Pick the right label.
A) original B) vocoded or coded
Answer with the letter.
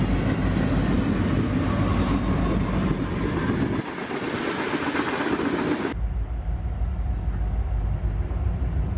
A